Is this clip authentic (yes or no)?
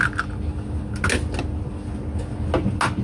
yes